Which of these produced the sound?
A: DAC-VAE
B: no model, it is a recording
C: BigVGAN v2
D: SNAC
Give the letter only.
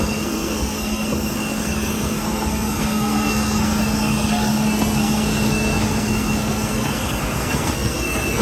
D